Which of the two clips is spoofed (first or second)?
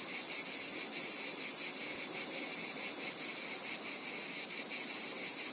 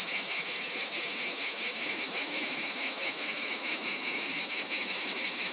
second